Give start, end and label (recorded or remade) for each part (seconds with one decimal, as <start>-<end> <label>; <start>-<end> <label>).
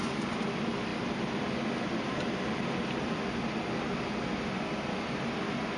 0.0-5.8 recorded